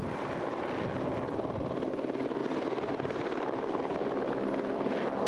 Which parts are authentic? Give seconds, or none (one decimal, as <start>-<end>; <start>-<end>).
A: 0.0-5.3